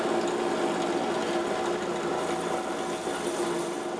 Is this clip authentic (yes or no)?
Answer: yes